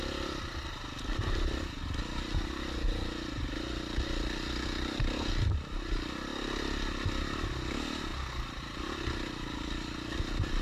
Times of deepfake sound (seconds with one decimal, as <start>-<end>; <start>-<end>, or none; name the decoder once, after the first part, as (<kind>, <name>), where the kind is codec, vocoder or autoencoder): none